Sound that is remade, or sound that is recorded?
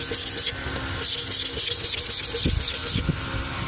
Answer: recorded